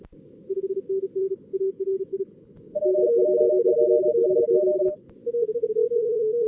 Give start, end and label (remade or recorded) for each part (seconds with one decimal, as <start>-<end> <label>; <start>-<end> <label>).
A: 0.0-1.2 recorded; 1.2-3.7 remade; 3.7-4.2 recorded; 4.2-5.1 remade; 5.1-6.5 recorded